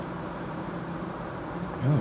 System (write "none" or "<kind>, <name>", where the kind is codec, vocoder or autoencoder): vocoder, BigVGAN v2